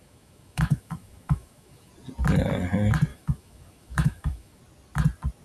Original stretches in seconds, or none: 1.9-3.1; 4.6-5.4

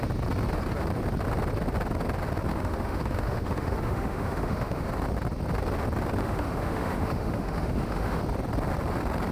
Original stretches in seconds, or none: 0.0-2.5; 4.9-6.2; 8.2-9.3

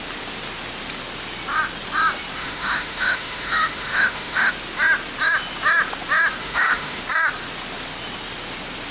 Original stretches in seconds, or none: 0.0-2.4; 4.5-6.4; 7.0-8.9

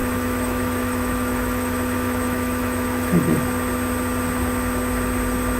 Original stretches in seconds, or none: 3.4-5.6

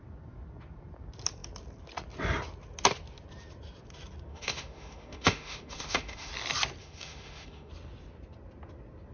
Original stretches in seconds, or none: 0.0-4.3; 6.3-6.8; 7.7-9.1